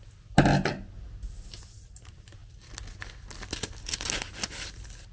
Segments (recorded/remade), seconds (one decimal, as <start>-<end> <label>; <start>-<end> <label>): 0.0-5.1 recorded